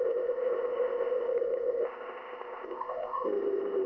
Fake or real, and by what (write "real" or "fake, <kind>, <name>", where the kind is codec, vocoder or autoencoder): fake, codec, ZipCodec